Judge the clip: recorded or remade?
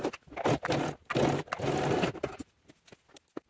recorded